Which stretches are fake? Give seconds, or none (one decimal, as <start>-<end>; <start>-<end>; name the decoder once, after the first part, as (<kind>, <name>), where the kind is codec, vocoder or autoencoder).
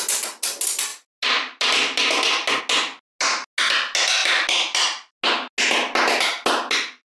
none